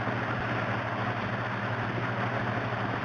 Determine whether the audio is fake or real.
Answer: real